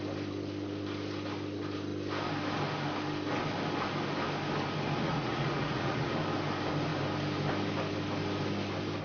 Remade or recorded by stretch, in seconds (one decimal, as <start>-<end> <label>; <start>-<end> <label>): 0.0-5.0 recorded; 5.0-6.1 remade; 6.1-9.0 recorded